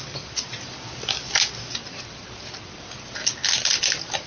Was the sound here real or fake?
real